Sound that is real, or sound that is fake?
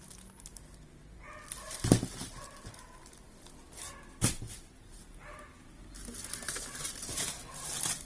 real